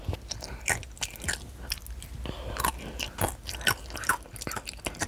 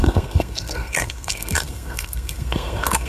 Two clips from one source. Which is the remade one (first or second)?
second